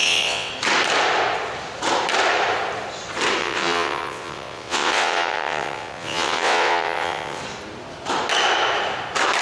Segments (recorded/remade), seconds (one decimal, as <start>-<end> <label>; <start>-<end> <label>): 0.0-0.5 remade; 0.5-3.4 recorded; 3.4-7.4 remade; 7.4-9.4 recorded